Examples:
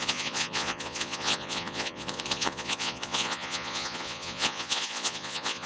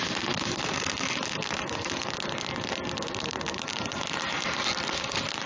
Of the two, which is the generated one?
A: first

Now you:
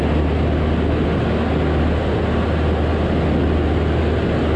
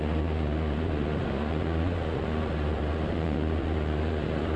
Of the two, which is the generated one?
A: second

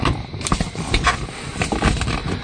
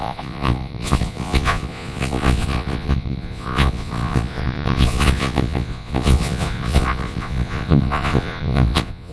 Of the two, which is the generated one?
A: second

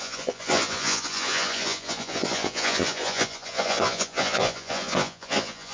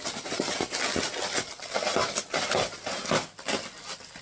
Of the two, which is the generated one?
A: first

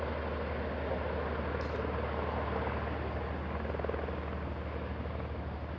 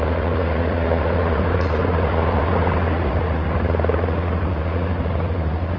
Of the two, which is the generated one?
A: second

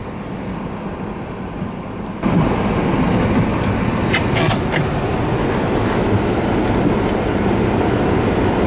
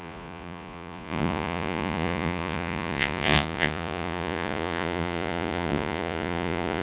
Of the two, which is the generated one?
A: second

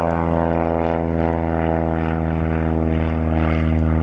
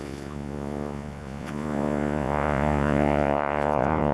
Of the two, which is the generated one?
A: second